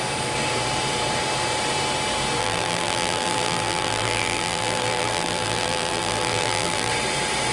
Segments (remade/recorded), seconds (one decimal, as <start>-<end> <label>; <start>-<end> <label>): 0.0-2.4 recorded; 2.4-6.9 remade; 6.9-7.5 recorded